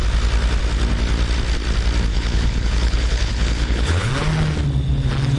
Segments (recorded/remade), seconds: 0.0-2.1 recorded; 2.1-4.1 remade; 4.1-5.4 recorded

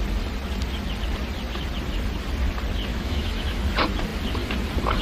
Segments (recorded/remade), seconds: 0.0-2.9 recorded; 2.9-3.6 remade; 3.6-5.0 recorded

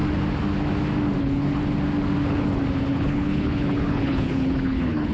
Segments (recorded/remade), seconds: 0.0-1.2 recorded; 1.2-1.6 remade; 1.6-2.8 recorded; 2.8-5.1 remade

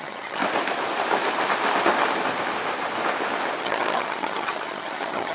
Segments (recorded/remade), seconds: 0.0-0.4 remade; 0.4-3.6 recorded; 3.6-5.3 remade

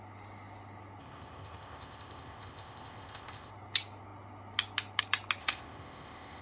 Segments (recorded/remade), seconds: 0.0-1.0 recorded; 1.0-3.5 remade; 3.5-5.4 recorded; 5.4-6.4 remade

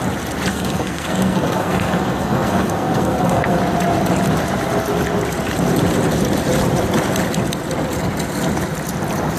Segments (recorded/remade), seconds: 0.0-0.5 recorded; 0.5-3.6 remade; 3.6-9.4 recorded